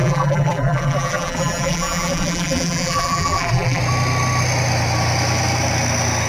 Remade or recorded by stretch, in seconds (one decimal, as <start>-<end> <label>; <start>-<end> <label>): 0.0-3.8 remade; 3.8-6.3 recorded